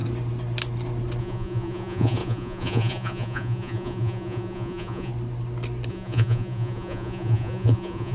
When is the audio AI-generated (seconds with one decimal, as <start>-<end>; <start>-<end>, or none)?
1.2-5.1; 5.9-8.1